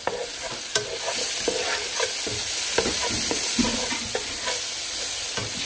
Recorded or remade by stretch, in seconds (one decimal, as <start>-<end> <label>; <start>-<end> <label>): 0.0-5.7 recorded